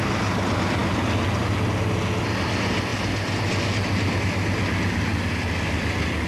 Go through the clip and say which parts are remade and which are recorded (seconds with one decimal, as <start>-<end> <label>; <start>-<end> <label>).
0.0-6.3 recorded